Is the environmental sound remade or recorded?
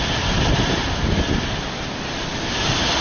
recorded